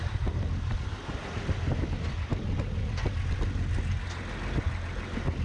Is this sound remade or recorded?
recorded